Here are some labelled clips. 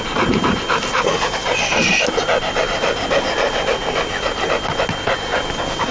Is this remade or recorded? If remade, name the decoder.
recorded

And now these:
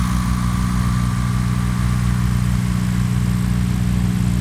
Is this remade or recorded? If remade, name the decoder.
recorded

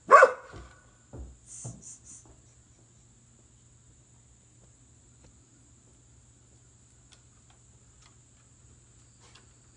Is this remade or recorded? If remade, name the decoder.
recorded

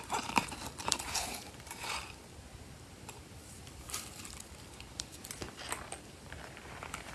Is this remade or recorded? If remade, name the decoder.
remade, vocoder, BigVGAN v2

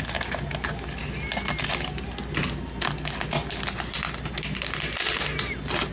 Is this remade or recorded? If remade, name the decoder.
recorded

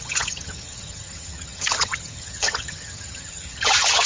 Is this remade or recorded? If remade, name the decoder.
remade, vocoder, HiFi-GAN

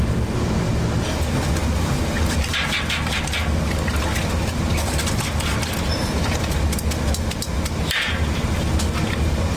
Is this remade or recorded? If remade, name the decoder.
recorded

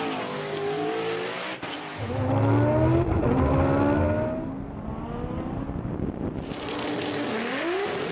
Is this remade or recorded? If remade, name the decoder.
recorded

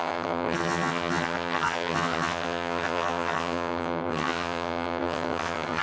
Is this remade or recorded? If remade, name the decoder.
remade, vocoder, HiFi-GAN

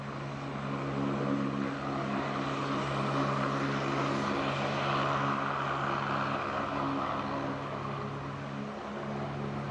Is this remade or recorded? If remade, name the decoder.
recorded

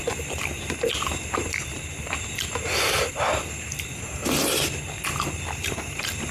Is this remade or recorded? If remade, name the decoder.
recorded